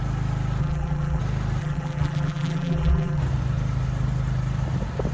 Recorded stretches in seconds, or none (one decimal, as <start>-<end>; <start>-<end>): 0.0-0.6; 1.2-1.6; 3.2-5.1